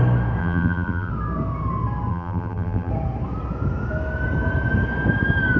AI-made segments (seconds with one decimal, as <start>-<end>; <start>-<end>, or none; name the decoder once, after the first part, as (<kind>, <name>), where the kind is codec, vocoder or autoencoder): 0.4-1.1 (vocoder, BigVGAN v2); 2.1-2.9